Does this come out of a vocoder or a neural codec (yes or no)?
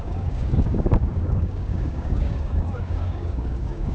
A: yes